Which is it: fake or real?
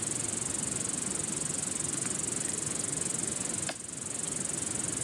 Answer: fake